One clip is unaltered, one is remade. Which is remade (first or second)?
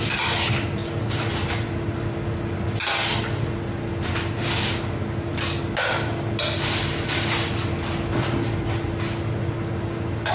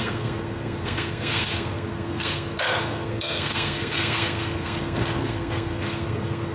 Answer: second